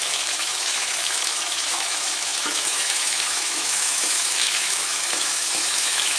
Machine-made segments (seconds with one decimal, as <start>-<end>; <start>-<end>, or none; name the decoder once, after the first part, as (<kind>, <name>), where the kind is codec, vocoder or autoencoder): 0.0-6.2 (autoencoder, DAC-VAE)